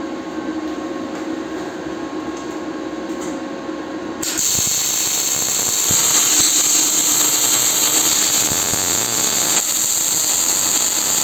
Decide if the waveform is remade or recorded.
recorded